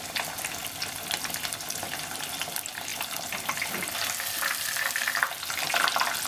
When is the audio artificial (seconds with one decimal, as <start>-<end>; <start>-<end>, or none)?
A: none